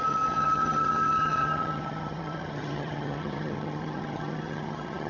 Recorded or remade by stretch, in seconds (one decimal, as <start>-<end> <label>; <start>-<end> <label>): 0.0-5.1 remade